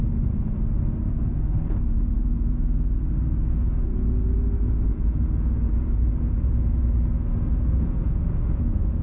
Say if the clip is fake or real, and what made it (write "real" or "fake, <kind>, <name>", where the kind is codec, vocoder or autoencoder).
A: fake, vocoder, Vocos